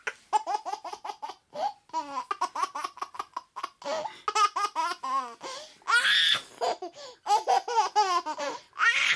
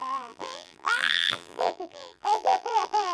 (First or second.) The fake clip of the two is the second